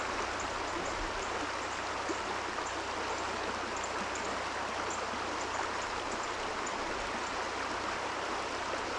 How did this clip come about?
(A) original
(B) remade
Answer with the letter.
A